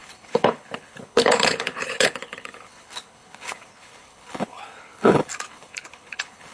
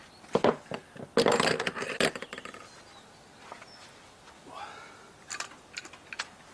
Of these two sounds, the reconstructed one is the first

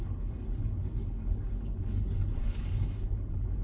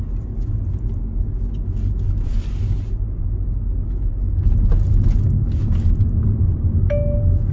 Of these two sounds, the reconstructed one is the first